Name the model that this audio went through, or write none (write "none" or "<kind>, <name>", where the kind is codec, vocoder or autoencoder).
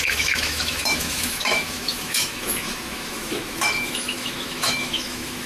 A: autoencoder, DAC-VAE